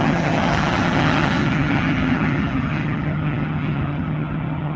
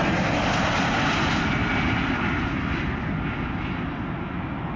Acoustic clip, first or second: second